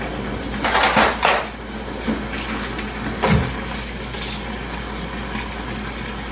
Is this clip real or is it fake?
real